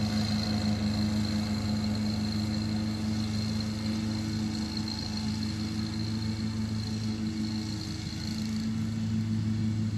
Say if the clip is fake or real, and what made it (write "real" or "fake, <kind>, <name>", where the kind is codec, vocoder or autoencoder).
real